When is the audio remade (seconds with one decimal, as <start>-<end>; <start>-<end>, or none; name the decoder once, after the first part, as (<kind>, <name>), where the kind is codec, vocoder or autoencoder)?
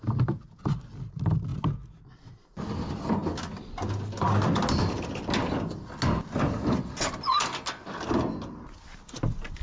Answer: none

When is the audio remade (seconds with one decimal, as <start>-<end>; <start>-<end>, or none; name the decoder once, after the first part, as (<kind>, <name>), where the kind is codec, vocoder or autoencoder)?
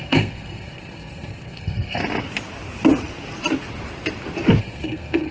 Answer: 0.0-2.0 (codec, SNAC); 4.6-5.3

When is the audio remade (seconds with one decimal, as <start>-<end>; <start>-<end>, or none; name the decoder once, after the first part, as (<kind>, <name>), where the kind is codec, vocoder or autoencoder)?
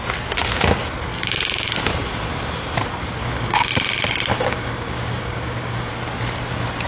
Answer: 3.2-3.7 (codec, DAC); 4.3-5.9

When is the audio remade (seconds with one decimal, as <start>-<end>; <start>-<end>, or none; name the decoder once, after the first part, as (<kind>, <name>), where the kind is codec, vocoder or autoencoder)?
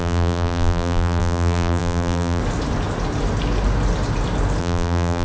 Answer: 0.0-2.4 (vocoder, BigVGAN v2); 4.6-5.2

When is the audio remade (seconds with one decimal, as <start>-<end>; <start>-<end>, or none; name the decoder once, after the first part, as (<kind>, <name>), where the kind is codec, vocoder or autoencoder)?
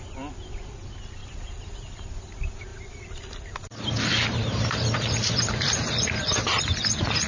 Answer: 1.2-2.0 (vocoder, BigVGAN v2); 2.7-6.6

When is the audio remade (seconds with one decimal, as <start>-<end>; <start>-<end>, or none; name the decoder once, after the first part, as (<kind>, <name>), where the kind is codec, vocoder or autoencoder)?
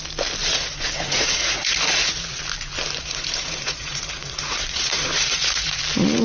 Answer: 0.4-2.4 (vocoder, Vocos); 3.0-5.8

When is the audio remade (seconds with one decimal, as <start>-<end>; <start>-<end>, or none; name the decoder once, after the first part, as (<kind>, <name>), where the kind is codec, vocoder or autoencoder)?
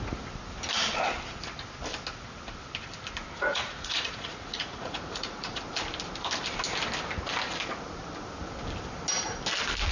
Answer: 3.5-5.6 (vocoder, Vocos)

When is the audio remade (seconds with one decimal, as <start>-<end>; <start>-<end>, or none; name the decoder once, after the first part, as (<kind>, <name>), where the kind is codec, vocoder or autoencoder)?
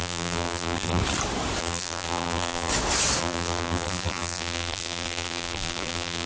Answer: 0.0-1.0 (vocoder, BigVGAN v2); 1.6-2.7; 3.2-6.3